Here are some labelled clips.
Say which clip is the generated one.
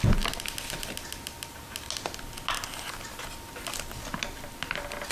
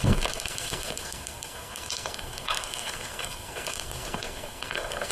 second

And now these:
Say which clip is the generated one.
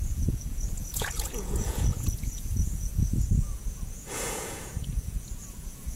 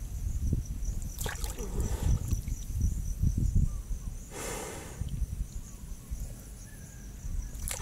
first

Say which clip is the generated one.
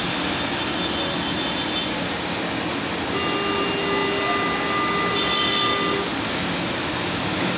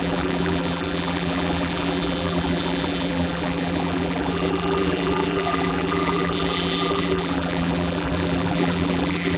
second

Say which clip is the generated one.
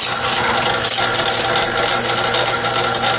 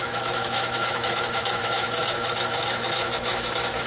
second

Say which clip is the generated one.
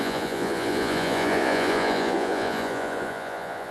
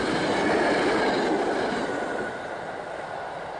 first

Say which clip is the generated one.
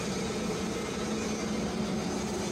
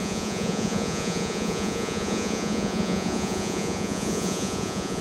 second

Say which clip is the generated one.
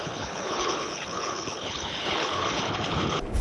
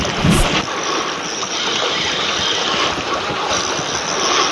first